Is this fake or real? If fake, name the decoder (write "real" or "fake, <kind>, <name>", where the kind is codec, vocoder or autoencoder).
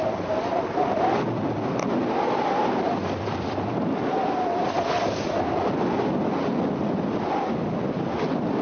real